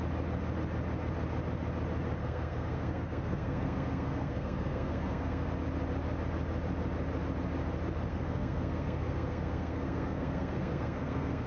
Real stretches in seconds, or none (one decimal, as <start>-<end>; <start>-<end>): 0.0-2.2; 5.5-8.1

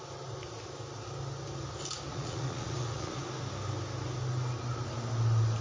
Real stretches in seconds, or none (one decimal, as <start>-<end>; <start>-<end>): 0.0-2.1; 3.2-5.6

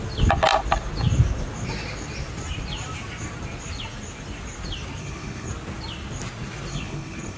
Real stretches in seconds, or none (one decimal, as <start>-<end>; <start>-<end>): 0.0-5.0; 5.5-6.7